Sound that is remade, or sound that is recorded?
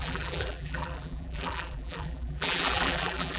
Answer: remade